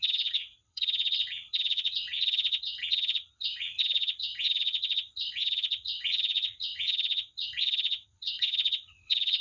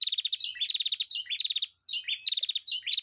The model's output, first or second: first